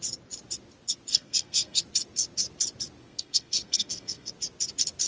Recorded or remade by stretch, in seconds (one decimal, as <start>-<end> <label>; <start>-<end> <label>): 0.0-1.1 recorded; 1.1-1.8 remade; 1.8-3.0 recorded; 3.0-4.3 remade; 4.3-5.1 recorded